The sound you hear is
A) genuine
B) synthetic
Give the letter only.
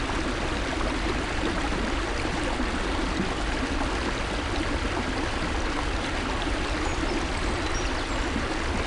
A